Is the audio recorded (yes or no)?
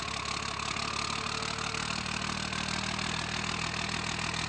yes